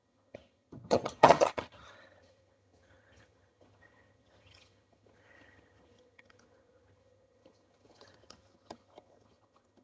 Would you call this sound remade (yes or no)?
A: yes